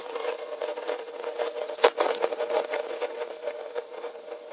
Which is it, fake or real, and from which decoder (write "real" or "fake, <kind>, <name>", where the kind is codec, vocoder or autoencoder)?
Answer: fake, vocoder, Vocos